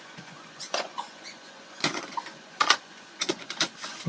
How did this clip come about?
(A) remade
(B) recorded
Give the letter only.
A